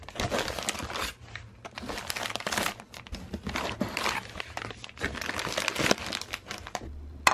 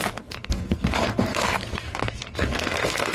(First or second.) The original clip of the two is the first